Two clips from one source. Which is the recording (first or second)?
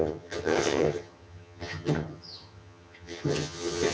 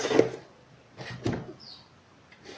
second